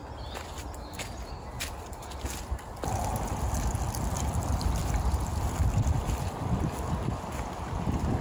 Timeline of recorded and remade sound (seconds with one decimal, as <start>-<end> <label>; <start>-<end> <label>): 0.0-8.2 recorded